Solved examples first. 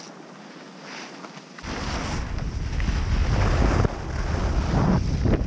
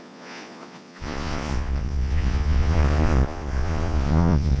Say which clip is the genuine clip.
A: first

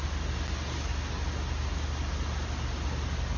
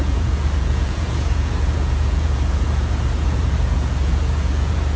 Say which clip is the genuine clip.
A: first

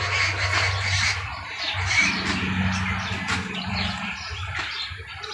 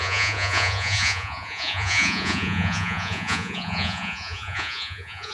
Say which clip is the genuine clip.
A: first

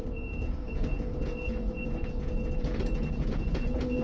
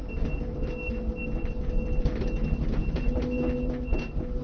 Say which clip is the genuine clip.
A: second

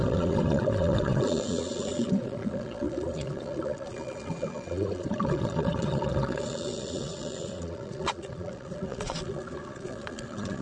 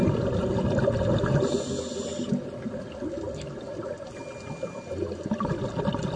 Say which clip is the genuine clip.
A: second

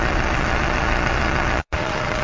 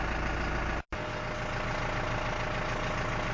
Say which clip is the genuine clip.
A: second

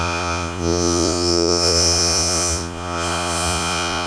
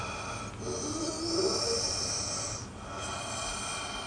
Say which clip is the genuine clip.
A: second